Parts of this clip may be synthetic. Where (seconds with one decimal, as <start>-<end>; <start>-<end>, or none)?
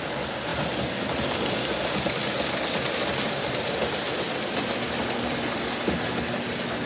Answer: none